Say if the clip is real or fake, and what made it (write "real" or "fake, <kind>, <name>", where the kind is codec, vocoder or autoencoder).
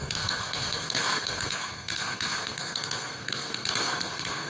fake, codec, SNAC